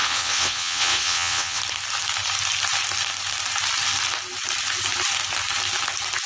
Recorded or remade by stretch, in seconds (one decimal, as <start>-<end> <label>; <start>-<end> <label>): 0.0-1.6 remade; 1.6-6.3 recorded